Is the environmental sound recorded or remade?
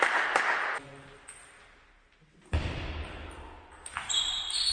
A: recorded